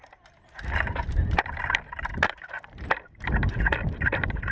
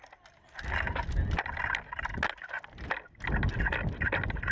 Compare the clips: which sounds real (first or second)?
second